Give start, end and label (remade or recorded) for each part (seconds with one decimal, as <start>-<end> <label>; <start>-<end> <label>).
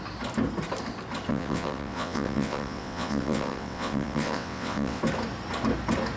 0.0-1.3 recorded; 1.3-5.0 remade; 5.0-6.2 recorded